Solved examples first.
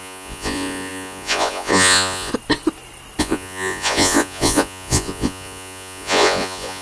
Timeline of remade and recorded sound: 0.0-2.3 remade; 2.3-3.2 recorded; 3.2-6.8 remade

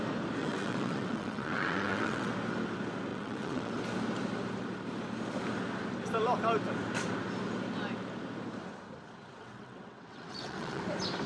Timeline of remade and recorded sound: 0.0-0.4 recorded; 0.4-2.3 remade; 2.3-3.1 recorded; 3.1-3.7 remade; 3.7-9.4 recorded; 9.4-10.8 remade; 10.8-11.3 recorded

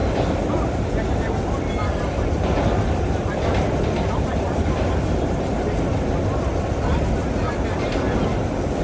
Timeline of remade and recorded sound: 0.0-8.8 recorded

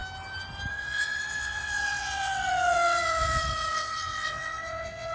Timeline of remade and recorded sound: 0.0-0.7 recorded; 0.7-5.1 remade

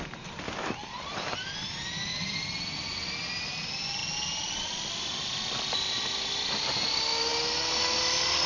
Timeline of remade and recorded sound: 0.0-4.0 remade; 4.0-5.0 recorded; 5.0-7.3 remade; 7.3-8.0 recorded; 8.0-8.5 remade

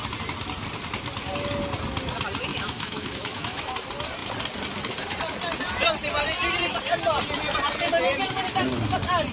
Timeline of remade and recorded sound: 0.0-2.5 recorded; 2.5-3.7 remade; 3.7-9.3 recorded

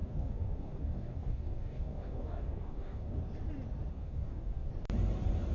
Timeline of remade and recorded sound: 0.0-3.2 remade; 3.2-3.9 recorded; 3.9-4.7 remade; 4.7-5.5 recorded

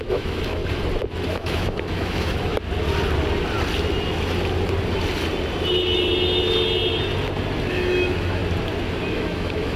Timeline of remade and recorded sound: 0.0-0.6 remade; 0.6-1.3 recorded; 1.3-2.5 remade; 2.5-7.6 recorded; 7.6-8.4 remade; 8.4-9.1 recorded; 9.1-9.8 remade